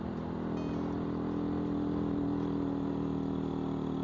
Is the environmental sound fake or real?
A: real